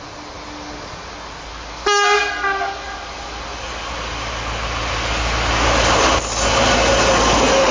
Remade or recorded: recorded